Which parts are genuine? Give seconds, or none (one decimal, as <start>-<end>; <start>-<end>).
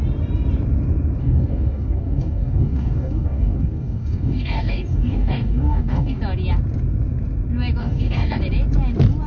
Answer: 0.0-1.2; 6.2-7.8; 8.4-9.3